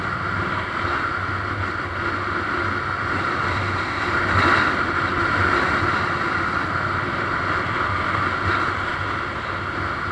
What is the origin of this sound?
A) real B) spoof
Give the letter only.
A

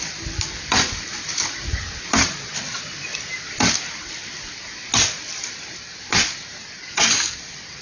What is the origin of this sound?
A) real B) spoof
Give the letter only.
A